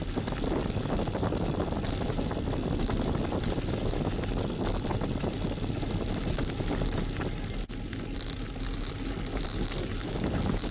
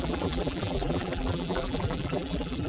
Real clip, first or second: first